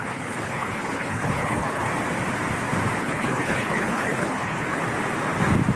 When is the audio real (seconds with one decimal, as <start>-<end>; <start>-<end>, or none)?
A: 1.9-3.0; 4.8-5.8